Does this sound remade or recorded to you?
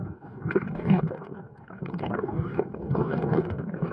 remade